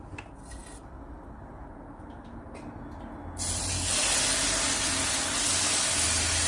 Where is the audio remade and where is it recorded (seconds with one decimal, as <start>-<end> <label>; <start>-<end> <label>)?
0.0-6.5 recorded